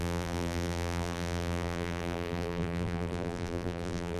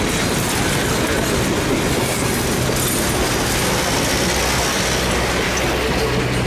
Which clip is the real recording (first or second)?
second